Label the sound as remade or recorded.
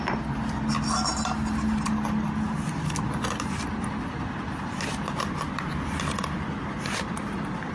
recorded